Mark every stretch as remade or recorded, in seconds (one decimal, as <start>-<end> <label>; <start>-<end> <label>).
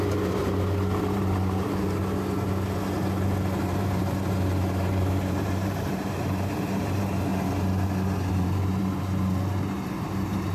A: 0.0-1.8 remade; 1.8-3.6 recorded; 3.6-7.3 remade; 7.3-8.3 recorded; 8.3-10.5 remade